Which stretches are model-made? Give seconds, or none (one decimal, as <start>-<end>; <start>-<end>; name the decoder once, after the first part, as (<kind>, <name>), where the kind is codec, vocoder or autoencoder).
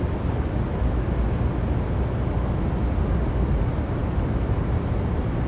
none